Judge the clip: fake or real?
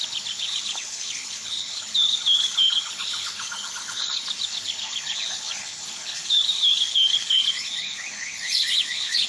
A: fake